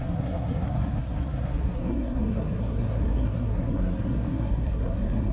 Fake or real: fake